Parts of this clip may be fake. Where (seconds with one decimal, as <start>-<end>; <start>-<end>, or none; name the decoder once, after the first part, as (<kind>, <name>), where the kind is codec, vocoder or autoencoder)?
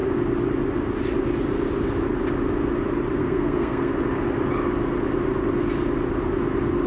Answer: 3.2-3.9 (codec, SNAC)